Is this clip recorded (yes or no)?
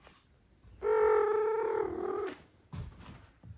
yes